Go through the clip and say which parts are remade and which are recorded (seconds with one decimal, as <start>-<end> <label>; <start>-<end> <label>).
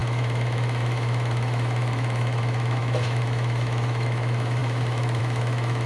0.0-5.9 remade